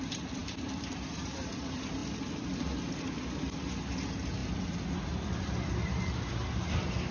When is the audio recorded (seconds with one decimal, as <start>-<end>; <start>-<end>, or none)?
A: 0.0-7.1